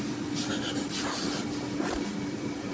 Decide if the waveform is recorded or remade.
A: remade